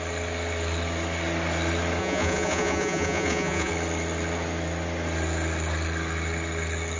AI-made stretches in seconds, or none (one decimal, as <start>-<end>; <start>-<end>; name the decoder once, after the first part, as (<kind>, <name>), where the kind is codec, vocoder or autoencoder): 2.0-3.7 (vocoder, Vocos)